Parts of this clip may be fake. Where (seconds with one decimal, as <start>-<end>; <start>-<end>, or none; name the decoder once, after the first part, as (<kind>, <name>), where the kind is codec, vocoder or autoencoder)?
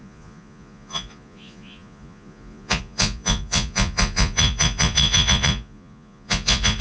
0.0-6.8 (vocoder, Vocos)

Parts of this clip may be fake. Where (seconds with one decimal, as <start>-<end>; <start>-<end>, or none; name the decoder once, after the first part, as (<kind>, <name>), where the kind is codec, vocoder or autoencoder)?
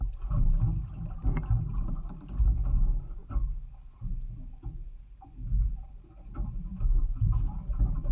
none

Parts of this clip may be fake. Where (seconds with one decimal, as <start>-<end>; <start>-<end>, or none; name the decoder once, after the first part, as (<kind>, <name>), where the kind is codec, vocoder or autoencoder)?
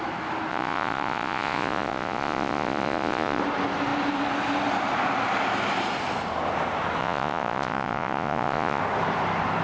0.5-3.4 (vocoder, Vocos); 7.0-8.8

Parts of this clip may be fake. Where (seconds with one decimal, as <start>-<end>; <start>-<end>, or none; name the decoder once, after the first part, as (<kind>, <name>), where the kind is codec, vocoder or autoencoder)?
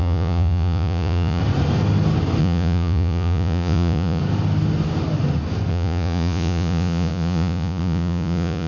0.0-1.4 (vocoder, Vocos); 2.4-4.2; 5.7-8.7